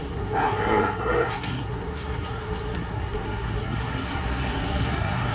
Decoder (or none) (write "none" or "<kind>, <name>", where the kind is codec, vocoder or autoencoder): codec, SNAC